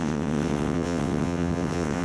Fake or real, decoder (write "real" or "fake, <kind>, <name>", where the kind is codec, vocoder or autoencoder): fake, vocoder, WaveNeXt